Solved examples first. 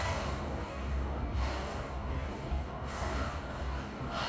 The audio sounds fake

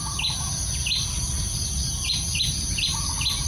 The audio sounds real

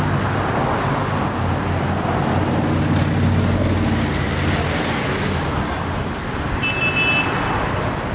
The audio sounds real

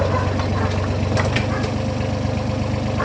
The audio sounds real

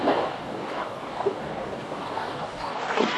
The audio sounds fake